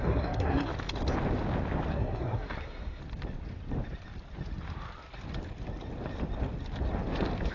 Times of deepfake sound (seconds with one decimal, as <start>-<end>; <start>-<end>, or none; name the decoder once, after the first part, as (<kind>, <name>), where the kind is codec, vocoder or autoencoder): 0.0-0.7 (codec, SNAC); 1.9-3.0